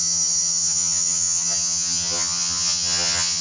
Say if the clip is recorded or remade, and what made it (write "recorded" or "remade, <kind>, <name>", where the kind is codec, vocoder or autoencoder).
remade, vocoder, HiFi-GAN